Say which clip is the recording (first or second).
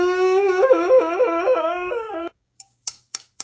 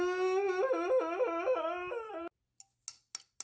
second